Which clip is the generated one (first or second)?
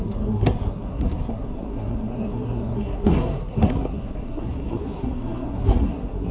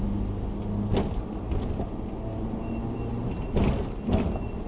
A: first